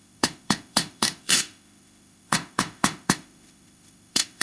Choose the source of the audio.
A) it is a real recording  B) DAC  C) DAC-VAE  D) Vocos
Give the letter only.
C